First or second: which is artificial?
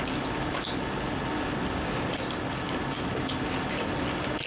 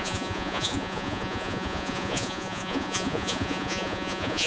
second